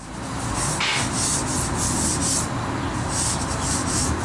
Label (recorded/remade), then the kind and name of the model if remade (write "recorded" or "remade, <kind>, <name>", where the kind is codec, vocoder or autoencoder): recorded